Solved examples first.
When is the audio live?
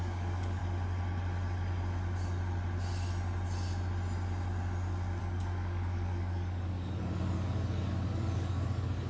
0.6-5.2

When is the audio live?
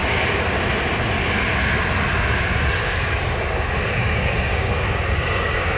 0.0-2.8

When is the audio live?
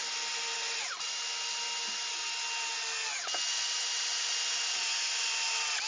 0.0-5.9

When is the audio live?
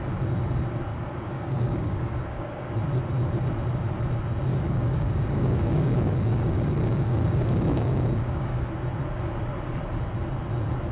0.0-0.9; 2.7-4.5; 8.7-10.9